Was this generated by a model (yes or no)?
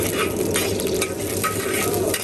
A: no